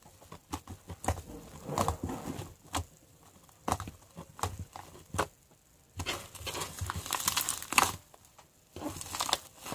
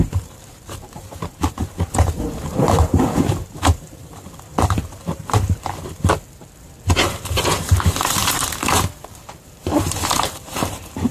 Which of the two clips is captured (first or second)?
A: first